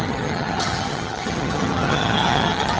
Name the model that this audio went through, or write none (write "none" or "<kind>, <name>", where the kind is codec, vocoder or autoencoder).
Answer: vocoder, HiFi-GAN